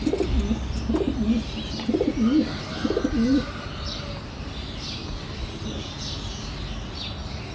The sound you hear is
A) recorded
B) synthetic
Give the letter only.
A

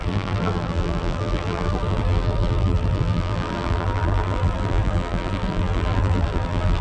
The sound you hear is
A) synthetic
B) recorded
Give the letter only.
A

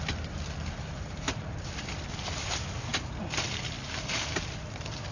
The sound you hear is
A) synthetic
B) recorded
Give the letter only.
B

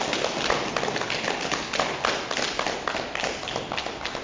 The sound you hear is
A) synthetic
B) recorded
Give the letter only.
B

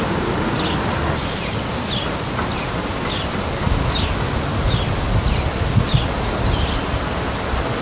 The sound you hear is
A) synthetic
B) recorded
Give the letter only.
B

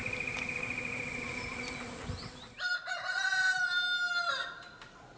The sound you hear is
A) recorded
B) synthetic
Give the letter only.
A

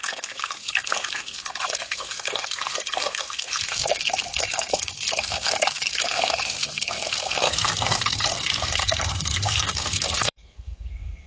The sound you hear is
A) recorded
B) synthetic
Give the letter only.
B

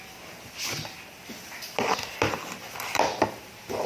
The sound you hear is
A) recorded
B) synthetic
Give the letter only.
A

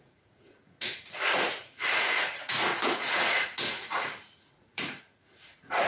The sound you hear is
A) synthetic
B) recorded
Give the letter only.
A